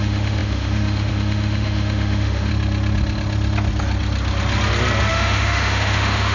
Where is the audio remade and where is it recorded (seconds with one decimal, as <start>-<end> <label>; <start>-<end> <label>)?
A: 0.0-2.5 remade; 2.5-5.1 recorded; 5.1-6.3 remade